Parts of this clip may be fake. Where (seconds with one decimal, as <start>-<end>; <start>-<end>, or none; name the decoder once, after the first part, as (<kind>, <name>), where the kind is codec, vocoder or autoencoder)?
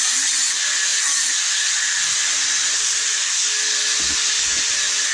none